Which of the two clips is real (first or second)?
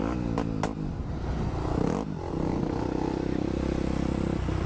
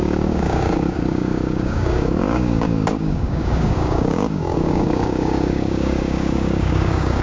first